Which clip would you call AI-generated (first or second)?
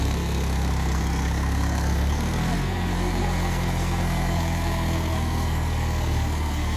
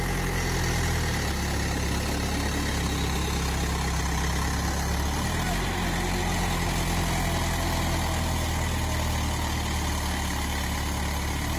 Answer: first